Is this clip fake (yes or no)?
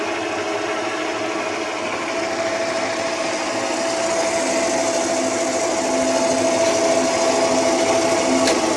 no